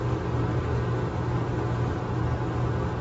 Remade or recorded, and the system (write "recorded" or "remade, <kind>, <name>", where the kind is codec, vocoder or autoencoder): recorded